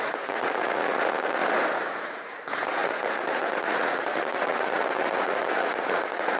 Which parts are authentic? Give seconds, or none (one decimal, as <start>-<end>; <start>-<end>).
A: 1.4-2.0